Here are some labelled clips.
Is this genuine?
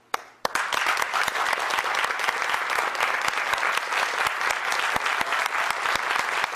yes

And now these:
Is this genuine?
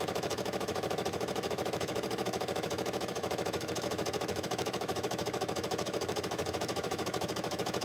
no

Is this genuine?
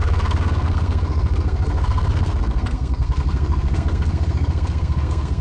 no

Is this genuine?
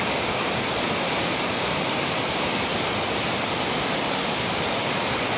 yes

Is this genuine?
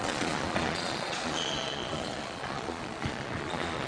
no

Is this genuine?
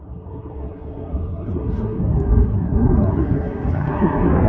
no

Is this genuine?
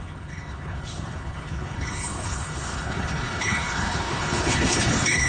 no